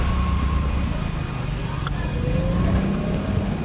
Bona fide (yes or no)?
yes